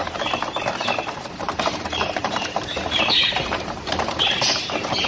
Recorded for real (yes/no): no